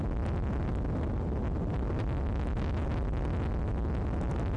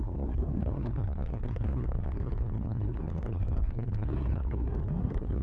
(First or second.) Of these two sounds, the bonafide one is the first